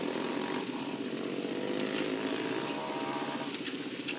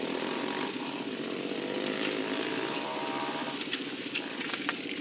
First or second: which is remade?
second